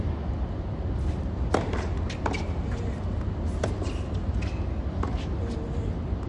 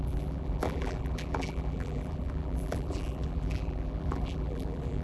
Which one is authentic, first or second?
first